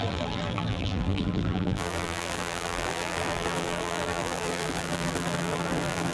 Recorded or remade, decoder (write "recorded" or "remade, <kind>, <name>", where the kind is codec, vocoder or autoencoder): remade, vocoder, BigVGAN v2